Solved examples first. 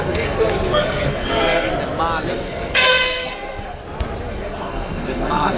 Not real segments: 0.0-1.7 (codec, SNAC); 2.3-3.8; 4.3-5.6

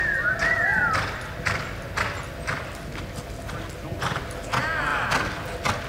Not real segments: none

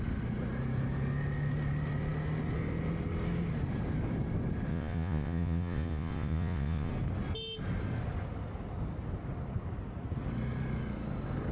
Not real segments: 4.7-6.9 (vocoder, Vocos)

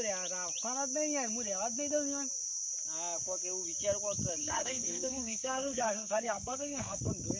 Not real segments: 4.4-7.0 (codec, SNAC)

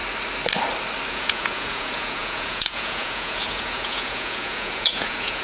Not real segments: 1.1-5.4 (vocoder, Vocos)

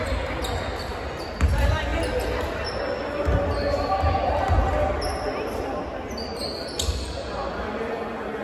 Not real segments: none

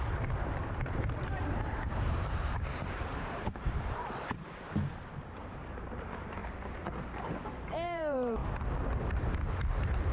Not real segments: 0.0-6.4 (vocoder, BigVGAN v2); 7.3-8.4; 9.0-10.1

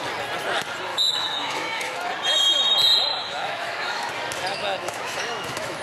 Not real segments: 0.9-2.1 (autoencoder, DAC-VAE); 3.1-4.1; 4.5-5.8